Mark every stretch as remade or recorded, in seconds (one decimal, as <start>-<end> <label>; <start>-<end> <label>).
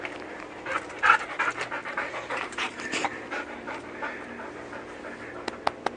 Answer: 0.0-1.8 recorded; 1.8-5.2 remade; 5.2-6.0 recorded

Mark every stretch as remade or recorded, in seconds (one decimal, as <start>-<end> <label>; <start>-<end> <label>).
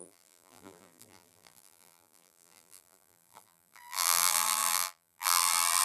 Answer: 0.0-5.8 remade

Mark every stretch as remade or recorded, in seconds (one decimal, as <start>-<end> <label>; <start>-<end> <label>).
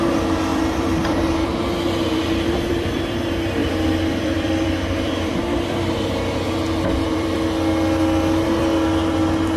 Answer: 0.0-0.5 recorded; 0.5-3.2 remade; 3.2-3.6 recorded; 3.6-7.4 remade; 7.4-9.6 recorded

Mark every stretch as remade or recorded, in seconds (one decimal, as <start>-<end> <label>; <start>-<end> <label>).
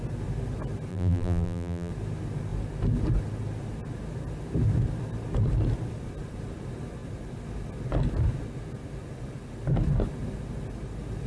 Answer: 0.0-0.9 recorded; 0.9-1.9 remade; 1.9-11.3 recorded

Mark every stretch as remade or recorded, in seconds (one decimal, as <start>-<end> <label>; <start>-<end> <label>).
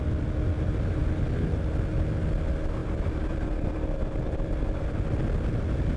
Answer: 0.0-2.8 recorded; 2.8-4.8 remade; 4.8-6.0 recorded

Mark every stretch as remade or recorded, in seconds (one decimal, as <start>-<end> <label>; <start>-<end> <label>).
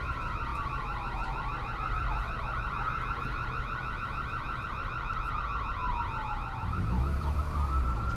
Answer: 0.0-0.5 recorded; 0.5-5.4 remade; 5.4-8.2 recorded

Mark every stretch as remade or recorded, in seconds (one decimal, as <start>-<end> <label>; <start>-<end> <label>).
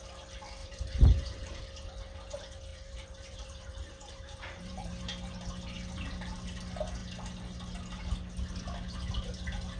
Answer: 0.0-0.6 recorded; 0.6-1.6 remade; 1.6-2.7 recorded; 2.7-4.9 remade; 4.9-9.8 recorded